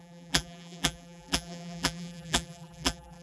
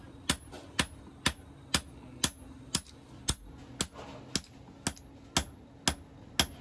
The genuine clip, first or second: second